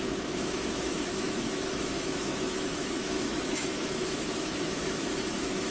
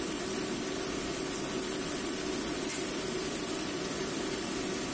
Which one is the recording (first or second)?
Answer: second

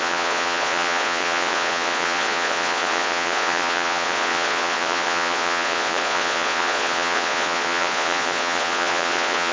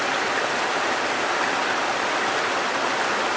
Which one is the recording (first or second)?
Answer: second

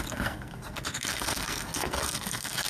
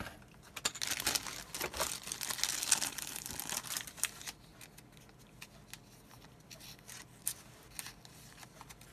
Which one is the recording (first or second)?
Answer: second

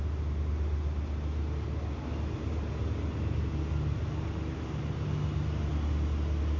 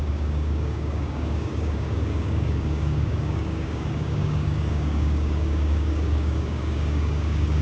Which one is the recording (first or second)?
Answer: first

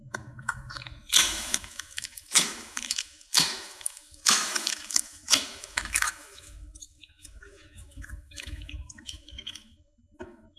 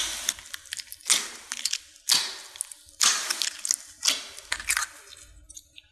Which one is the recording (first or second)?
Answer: second